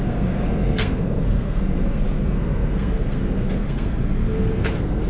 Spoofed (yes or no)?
yes